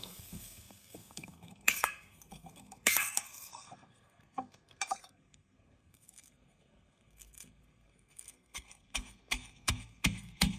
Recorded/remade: remade